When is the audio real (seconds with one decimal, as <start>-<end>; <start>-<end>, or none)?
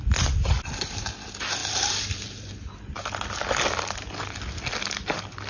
0.0-5.5